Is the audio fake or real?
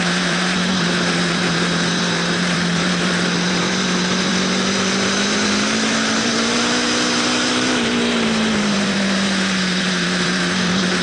fake